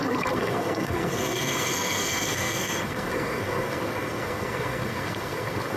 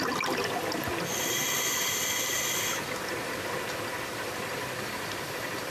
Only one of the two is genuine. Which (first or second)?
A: second